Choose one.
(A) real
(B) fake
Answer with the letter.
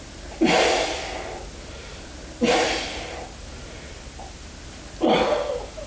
A